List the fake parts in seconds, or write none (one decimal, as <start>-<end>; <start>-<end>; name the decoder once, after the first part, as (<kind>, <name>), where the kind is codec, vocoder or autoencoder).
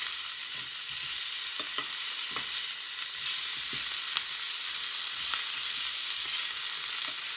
none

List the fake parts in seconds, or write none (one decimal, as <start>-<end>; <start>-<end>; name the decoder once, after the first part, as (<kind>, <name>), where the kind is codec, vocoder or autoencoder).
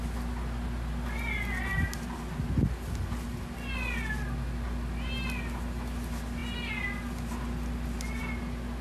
none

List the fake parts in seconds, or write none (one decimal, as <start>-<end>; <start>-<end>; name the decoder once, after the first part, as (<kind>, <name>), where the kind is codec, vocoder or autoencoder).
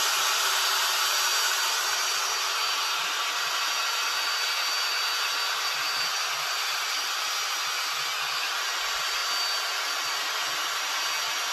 none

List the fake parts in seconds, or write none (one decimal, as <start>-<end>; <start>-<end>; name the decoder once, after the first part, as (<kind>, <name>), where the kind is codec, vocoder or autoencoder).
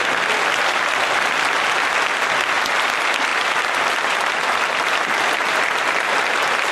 3.3-6.1 (vocoder, BigVGAN v2)